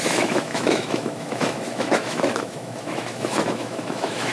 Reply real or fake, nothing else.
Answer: fake